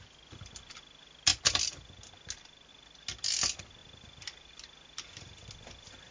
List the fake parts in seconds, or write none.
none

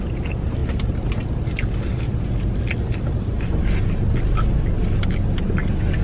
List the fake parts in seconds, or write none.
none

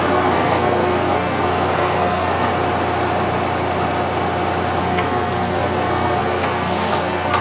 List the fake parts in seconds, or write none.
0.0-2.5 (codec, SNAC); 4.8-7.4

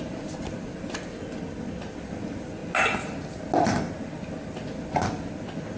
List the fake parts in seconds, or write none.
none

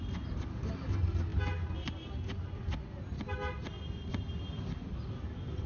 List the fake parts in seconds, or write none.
none

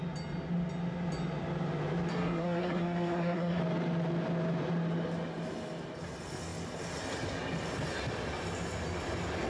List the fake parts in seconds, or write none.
2.1-3.6 (codec, SNAC)

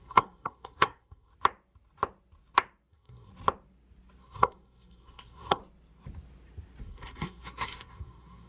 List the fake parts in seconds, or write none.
0.0-1.3 (codec, SNAC); 2.9-3.3; 4.2-5.6; 6.8-8.5

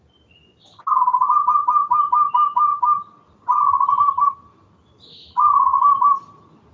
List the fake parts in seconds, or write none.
none